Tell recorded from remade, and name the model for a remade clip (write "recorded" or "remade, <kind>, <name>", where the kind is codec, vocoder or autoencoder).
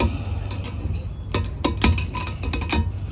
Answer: recorded